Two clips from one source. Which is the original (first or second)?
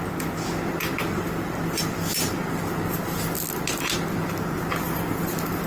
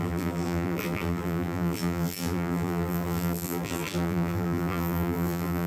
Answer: first